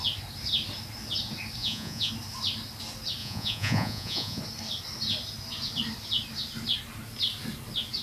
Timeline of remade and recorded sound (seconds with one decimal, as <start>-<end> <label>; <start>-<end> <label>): 0.0-1.6 recorded; 1.6-2.1 remade; 2.1-3.2 recorded; 3.2-4.4 remade; 4.4-8.0 recorded